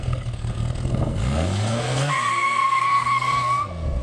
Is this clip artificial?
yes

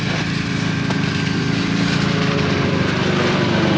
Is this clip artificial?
no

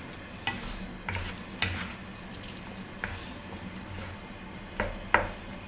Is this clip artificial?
no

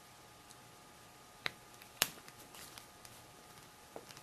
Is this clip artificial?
yes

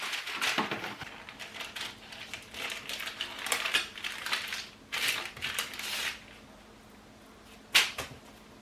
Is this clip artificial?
no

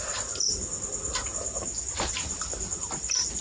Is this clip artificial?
no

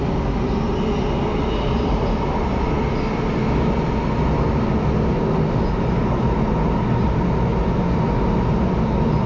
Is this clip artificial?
no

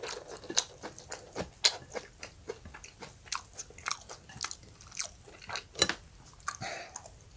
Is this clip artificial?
no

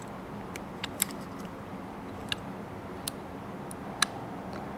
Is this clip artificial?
no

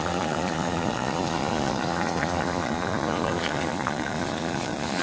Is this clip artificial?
yes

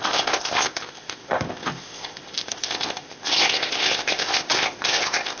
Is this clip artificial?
yes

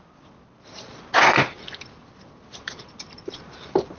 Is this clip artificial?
no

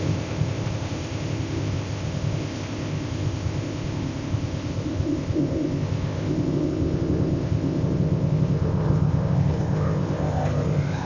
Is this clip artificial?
yes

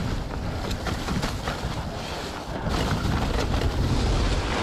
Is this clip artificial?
no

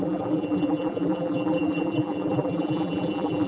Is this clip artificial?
yes